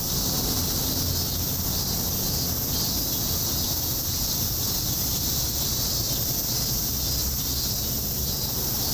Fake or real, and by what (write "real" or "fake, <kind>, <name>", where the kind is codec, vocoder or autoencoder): real